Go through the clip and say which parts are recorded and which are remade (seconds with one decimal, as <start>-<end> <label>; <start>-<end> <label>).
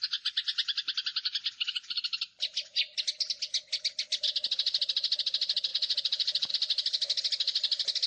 0.0-5.7 recorded; 5.7-6.5 remade; 6.5-8.1 recorded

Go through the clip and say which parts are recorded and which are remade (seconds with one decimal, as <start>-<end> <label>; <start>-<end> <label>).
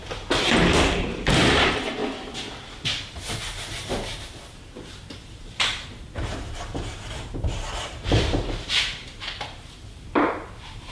0.0-1.0 recorded; 1.0-2.0 remade; 2.0-3.4 recorded; 3.4-10.9 remade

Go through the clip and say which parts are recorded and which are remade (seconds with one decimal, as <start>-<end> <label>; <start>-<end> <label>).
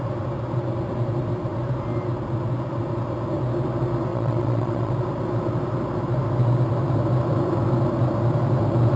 0.0-4.1 recorded; 4.1-4.9 remade; 4.9-9.0 recorded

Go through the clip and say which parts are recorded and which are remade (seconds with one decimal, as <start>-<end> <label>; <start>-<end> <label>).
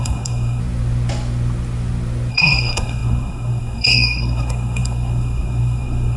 0.0-0.6 remade; 0.6-2.3 recorded; 2.3-6.2 remade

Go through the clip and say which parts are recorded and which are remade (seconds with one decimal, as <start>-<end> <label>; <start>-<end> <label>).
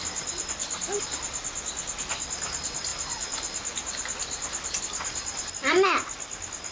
0.0-6.7 recorded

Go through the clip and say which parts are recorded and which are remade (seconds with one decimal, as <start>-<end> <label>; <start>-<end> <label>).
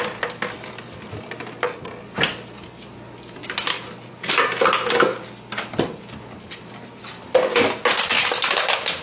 0.0-9.0 recorded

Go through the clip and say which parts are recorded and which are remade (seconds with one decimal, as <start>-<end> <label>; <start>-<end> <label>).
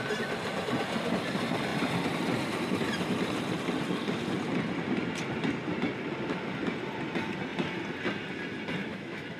0.0-8.8 recorded; 8.8-9.4 remade